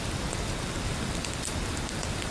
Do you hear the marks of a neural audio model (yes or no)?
yes